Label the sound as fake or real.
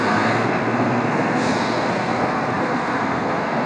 fake